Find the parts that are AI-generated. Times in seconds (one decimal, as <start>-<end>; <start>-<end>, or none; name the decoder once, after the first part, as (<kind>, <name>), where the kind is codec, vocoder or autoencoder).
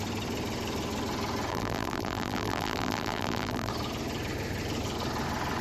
1.5-3.7 (vocoder, BigVGAN v2)